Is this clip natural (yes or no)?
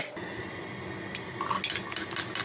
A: yes